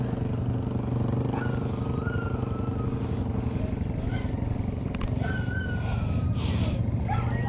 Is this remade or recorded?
recorded